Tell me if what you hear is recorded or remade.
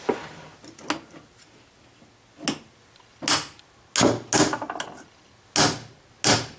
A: recorded